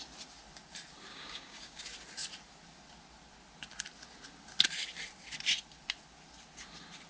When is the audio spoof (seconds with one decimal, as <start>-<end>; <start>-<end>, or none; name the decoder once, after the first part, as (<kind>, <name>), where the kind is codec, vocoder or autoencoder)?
1.1-1.8 (codec, DAC)